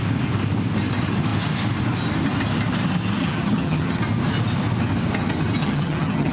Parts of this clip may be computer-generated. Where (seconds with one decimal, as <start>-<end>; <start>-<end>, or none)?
3.2-4.0; 5.6-6.3

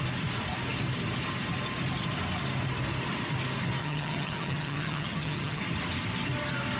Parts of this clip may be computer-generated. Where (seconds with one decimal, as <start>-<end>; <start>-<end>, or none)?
3.8-5.6

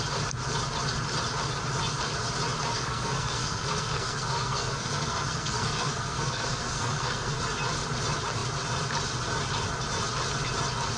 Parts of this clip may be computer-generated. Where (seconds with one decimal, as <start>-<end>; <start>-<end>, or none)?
2.7-7.4

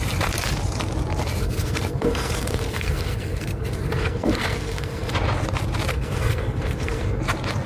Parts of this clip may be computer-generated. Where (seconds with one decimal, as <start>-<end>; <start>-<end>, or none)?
1.4-5.1; 5.9-7.2

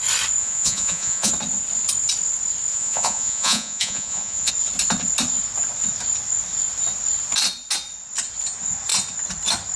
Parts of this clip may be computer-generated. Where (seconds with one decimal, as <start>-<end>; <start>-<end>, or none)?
0.4-1.3; 2.7-4.5

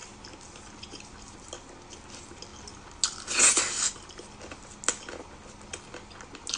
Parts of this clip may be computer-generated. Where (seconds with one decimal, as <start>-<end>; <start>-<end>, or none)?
none